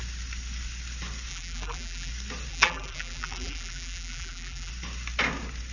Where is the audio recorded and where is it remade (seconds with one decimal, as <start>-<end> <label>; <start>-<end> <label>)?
0.0-1.3 recorded; 1.3-2.1 remade; 2.1-2.5 recorded; 2.5-4.7 remade; 4.7-5.7 recorded

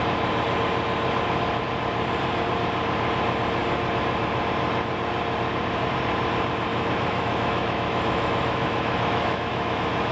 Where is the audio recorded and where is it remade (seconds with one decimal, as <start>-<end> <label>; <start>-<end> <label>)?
0.0-6.7 recorded; 6.7-10.1 remade

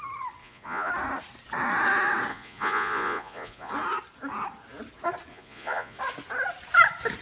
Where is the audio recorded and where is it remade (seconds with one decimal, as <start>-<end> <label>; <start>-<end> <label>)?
0.0-0.4 recorded; 0.4-0.9 remade; 0.9-2.3 recorded; 2.3-3.7 remade; 3.7-5.3 recorded; 5.3-6.0 remade; 6.0-7.2 recorded